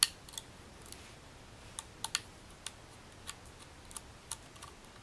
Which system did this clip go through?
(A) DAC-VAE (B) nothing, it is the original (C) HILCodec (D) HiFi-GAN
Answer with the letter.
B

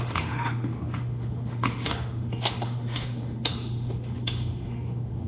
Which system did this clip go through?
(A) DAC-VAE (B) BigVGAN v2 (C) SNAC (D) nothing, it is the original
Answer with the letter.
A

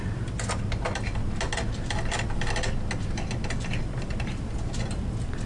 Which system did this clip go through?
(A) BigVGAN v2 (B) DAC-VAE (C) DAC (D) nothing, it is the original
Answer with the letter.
D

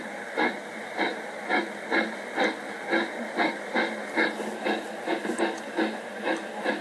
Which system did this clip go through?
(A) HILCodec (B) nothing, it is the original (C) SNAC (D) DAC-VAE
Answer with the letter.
B